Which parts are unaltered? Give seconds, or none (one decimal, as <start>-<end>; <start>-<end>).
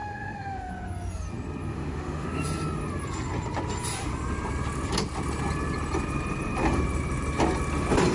0.7-1.7; 2.4-8.1